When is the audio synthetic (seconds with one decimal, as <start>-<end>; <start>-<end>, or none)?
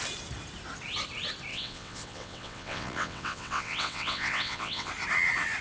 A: 1.5-4.9